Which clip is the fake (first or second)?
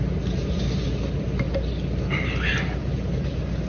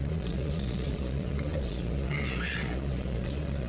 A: second